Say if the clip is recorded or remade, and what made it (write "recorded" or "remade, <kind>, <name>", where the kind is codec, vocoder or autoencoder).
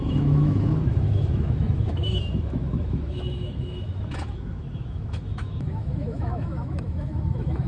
remade, autoencoder, DAC-VAE